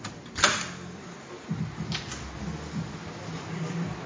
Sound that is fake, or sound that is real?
real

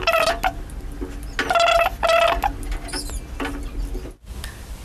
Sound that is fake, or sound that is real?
real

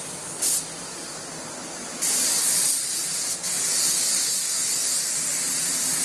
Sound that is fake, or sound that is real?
real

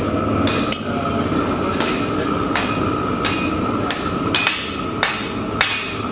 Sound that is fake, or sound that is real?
real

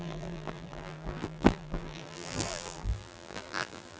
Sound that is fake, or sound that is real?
fake